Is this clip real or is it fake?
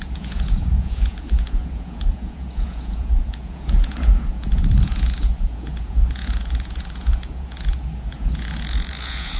fake